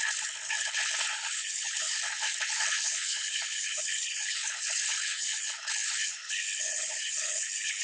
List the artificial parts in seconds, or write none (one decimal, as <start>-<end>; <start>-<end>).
0.0-7.8